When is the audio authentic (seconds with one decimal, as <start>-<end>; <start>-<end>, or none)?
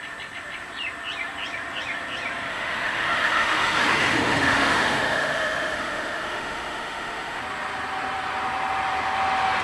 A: 0.0-2.5; 7.4-9.6